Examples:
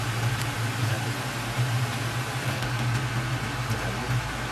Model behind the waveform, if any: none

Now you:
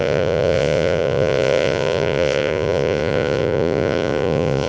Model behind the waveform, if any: vocoder, Vocos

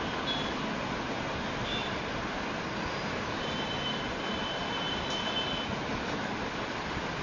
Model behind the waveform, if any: none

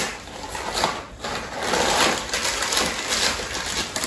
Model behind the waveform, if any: none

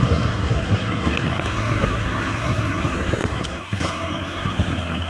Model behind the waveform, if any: codec, SNAC